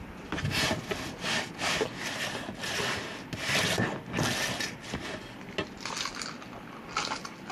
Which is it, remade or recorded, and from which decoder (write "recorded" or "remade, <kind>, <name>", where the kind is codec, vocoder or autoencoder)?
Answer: recorded